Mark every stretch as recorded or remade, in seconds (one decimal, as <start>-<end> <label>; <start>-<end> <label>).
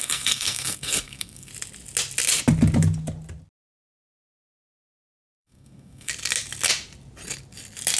0.0-1.5 remade; 1.5-4.6 recorded; 4.6-6.1 remade; 6.1-8.0 recorded